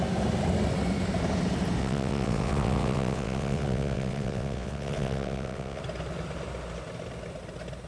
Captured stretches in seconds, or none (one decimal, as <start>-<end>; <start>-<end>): 0.0-1.8; 5.8-7.9